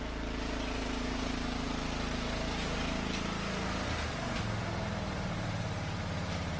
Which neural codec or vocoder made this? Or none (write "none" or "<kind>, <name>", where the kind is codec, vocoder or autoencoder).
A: vocoder, BigVGAN v2